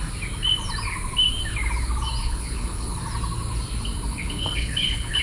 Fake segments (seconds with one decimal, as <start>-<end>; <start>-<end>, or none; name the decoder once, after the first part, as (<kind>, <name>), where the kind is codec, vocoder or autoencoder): 2.2-3.0 (codec, HILCodec); 4.1-5.2